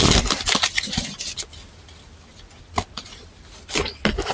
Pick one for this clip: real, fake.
real